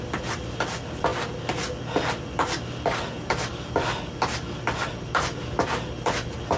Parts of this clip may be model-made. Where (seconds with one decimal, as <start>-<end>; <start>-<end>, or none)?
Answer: none